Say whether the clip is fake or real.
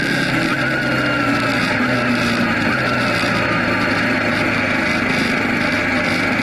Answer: real